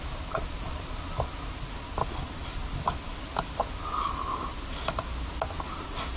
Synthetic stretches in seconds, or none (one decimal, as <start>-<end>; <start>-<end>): none